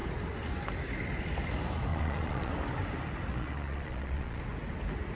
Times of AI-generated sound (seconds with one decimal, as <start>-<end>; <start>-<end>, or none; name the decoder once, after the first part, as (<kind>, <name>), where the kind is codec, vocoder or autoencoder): 1.9-2.5 (vocoder, Vocos); 3.3-4.4